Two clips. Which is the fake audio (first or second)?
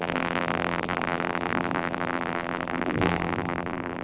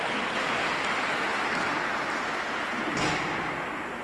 first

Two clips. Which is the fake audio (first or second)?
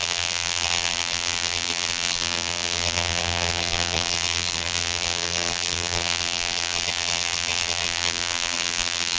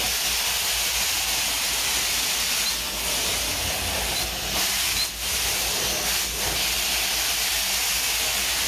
first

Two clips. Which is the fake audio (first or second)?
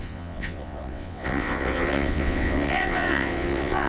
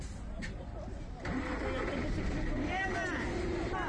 first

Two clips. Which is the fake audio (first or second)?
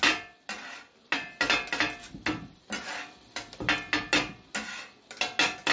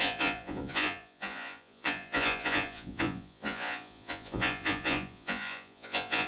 second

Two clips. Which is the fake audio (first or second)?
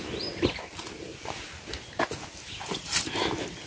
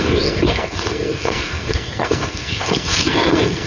second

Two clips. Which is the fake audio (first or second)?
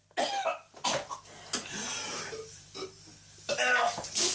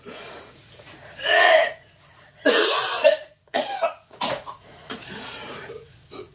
second